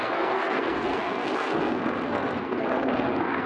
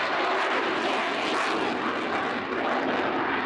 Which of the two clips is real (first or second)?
second